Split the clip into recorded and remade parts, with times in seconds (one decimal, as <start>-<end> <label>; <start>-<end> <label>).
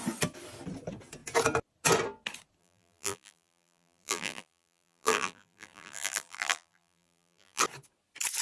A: 0.0-2.6 recorded; 2.6-7.6 remade; 7.6-8.4 recorded